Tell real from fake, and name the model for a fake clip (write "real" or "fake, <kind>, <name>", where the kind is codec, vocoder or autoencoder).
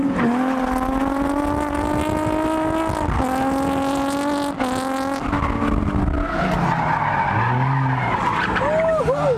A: real